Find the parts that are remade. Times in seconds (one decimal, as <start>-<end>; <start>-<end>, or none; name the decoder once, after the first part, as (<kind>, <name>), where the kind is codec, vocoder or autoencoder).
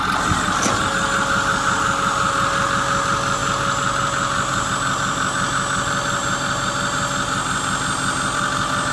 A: 6.2-6.7 (vocoder, BigVGAN v2)